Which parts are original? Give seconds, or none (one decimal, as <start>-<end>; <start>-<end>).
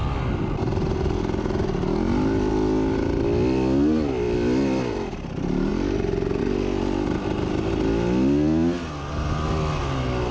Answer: 0.0-10.3